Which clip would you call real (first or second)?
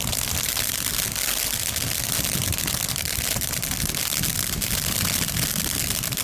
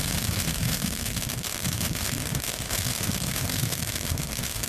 first